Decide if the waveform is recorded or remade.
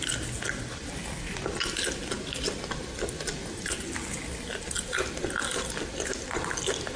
recorded